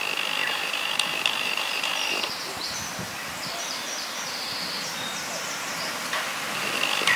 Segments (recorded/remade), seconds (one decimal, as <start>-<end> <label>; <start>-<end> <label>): 0.0-0.4 recorded; 0.4-4.7 remade; 4.7-7.2 recorded